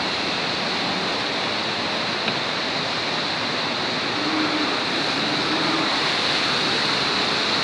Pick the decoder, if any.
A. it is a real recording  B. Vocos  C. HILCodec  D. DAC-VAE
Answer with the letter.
A